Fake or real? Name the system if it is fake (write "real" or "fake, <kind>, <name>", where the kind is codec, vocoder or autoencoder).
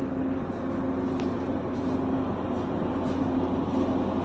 real